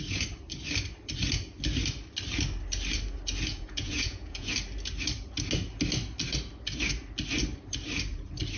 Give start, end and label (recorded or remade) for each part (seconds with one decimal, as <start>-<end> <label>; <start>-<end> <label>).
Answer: 0.0-3.5 recorded; 3.5-4.5 remade; 4.5-8.6 recorded